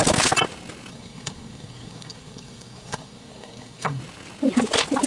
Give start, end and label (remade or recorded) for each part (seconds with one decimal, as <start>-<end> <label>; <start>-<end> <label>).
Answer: 0.0-0.9 recorded; 0.9-4.0 remade; 4.0-5.1 recorded